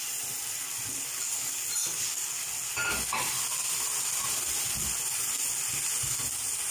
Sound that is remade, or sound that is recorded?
recorded